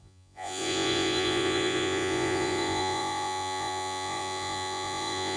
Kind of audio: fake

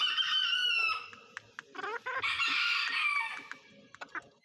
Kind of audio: real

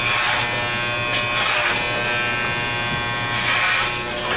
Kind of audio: real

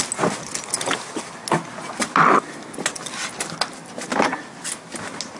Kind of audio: real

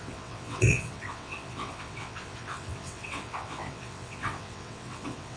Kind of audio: fake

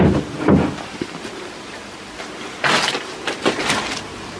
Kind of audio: real